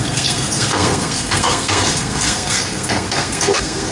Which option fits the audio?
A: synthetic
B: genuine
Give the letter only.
A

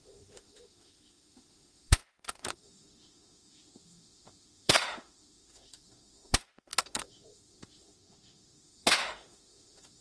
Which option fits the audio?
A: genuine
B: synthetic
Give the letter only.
B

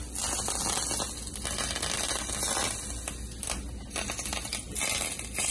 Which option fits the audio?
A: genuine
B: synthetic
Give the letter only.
A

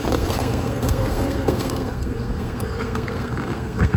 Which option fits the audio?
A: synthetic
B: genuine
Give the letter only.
A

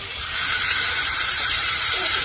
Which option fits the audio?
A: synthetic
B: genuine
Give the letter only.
A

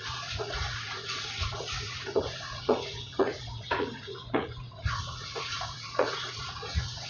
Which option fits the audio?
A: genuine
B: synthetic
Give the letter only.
B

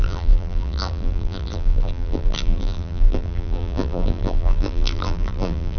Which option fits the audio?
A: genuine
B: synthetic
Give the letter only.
B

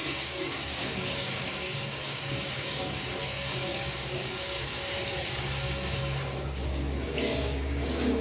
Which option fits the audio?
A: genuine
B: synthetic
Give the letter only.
B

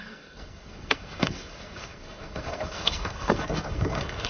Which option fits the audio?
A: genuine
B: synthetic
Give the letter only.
B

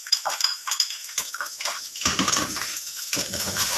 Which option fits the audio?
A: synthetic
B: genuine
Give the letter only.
A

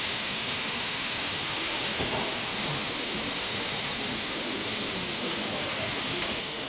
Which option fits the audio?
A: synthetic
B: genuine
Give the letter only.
A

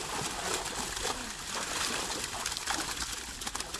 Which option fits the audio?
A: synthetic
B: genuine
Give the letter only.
B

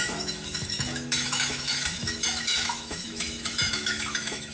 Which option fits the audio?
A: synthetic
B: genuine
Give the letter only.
A